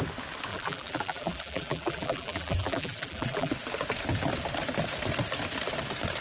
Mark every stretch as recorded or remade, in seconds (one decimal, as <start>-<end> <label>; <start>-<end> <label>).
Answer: 0.0-0.5 recorded; 0.5-3.5 remade; 3.5-6.2 recorded

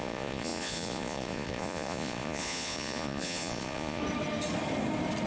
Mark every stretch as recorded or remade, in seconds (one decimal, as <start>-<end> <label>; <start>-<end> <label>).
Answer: 0.0-4.0 remade; 4.0-5.3 recorded

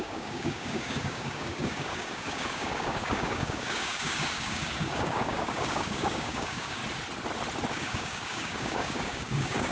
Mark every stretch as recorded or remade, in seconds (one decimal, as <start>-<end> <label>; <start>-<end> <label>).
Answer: 0.0-6.8 remade; 6.8-7.7 recorded; 7.7-9.7 remade

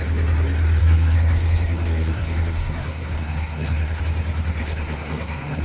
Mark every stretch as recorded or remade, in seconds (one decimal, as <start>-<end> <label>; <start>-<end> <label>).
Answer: 0.0-0.8 recorded; 0.8-4.0 remade; 4.0-4.6 recorded; 4.6-5.6 remade

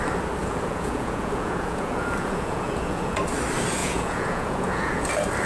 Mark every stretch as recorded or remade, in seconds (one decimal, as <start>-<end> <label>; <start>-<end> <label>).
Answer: 0.0-0.4 recorded; 0.4-3.2 remade; 3.2-3.8 recorded; 3.8-5.1 remade; 5.1-5.5 recorded

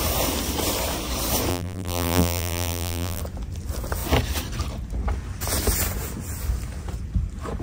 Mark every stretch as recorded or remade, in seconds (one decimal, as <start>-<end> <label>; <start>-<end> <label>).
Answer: 0.0-1.5 recorded; 1.5-3.2 remade; 3.2-7.6 recorded

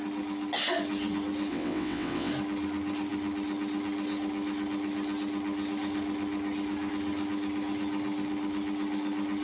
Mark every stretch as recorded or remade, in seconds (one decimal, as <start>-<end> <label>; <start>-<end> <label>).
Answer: 0.0-1.5 recorded; 1.5-2.3 remade; 2.3-9.4 recorded